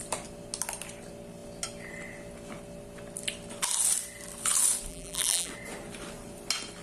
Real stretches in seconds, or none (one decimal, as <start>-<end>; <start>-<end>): 0.0-4.9; 5.5-6.8